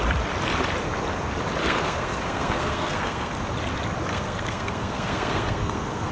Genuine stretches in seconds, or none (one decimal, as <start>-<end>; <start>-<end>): 0.0-1.6; 3.3-4.1